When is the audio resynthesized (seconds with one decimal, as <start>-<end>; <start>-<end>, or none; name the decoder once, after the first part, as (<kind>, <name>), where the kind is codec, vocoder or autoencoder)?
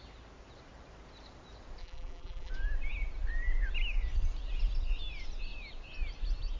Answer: 1.8-2.5 (vocoder, BigVGAN v2)